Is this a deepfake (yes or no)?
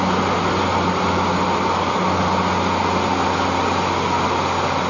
no